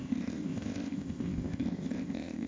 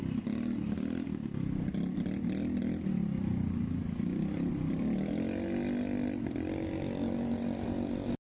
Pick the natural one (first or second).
second